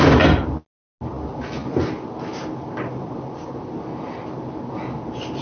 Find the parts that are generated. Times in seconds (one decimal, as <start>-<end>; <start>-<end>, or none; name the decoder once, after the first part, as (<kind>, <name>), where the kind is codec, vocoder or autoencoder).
none